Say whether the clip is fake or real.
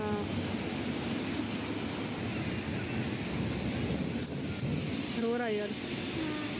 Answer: real